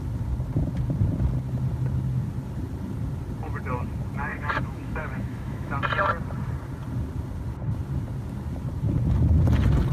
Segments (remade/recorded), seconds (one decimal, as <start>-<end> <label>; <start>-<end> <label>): 0.0-4.3 recorded; 4.3-5.7 remade; 5.7-9.9 recorded